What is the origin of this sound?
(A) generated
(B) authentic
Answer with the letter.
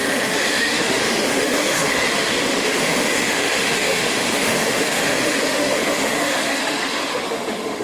A